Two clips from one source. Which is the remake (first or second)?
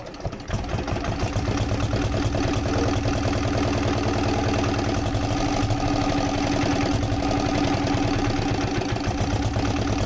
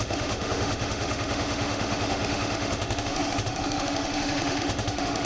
second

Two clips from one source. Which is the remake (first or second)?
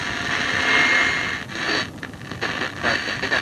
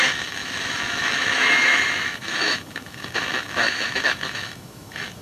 second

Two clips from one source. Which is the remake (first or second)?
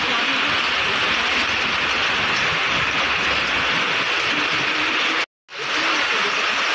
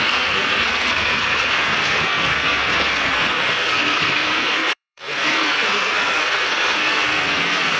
second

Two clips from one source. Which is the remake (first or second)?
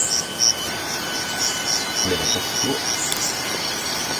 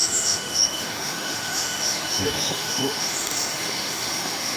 second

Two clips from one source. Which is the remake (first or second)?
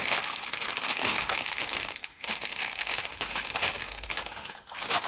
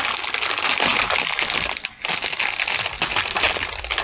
first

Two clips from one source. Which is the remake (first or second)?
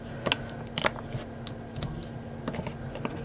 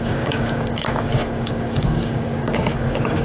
second